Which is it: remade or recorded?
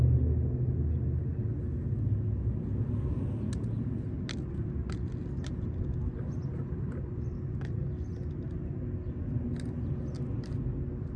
recorded